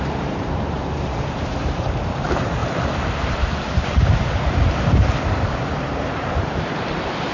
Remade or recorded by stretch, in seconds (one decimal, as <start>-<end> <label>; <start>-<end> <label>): 0.0-7.3 remade